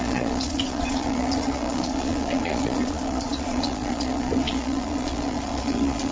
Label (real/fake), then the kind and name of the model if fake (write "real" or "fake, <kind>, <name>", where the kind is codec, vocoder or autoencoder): fake, vocoder, Vocos